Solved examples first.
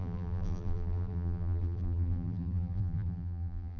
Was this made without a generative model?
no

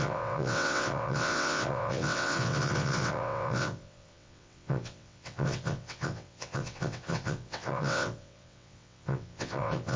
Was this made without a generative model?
no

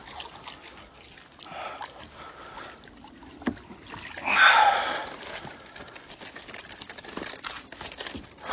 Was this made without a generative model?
yes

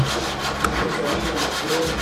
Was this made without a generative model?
yes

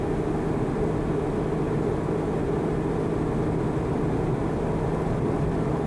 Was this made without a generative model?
yes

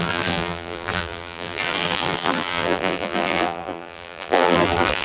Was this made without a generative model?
no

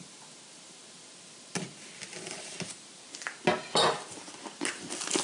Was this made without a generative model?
yes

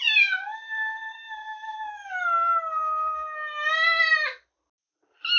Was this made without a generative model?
yes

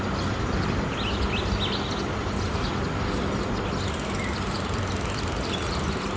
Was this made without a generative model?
yes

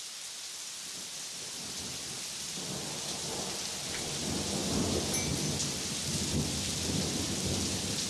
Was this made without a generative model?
yes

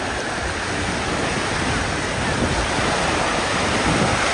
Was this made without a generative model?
yes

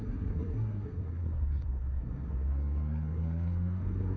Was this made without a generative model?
no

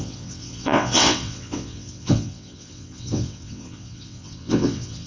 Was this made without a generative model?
no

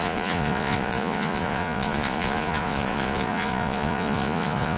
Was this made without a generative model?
no